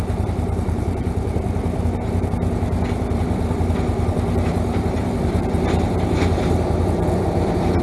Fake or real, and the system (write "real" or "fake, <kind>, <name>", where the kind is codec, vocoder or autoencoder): fake, vocoder, BigVGAN v2